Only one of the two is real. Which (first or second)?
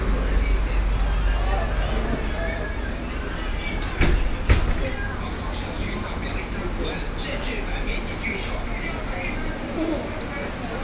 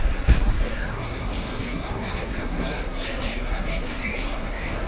first